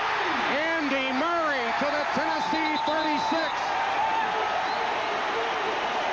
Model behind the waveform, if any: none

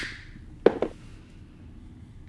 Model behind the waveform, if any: none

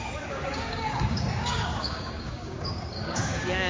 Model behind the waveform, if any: codec, DAC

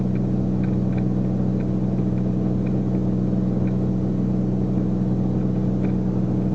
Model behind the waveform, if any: none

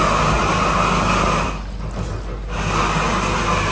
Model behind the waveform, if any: none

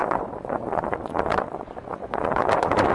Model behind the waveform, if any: vocoder, Vocos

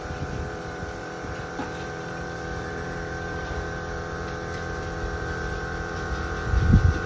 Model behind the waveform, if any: vocoder, BigVGAN v2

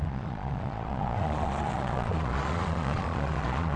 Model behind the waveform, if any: vocoder, Vocos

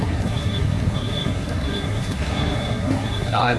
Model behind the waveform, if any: codec, SNAC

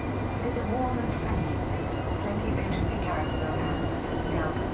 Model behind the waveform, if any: none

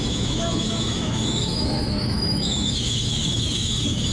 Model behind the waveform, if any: autoencoder, DAC-VAE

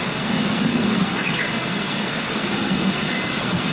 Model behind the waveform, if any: codec, SNAC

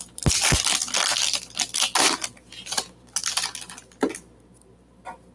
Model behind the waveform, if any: none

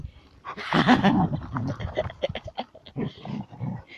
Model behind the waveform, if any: vocoder, BigVGAN v2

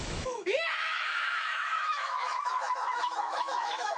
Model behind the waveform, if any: autoencoder, DAC-VAE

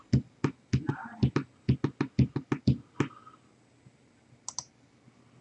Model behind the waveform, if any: none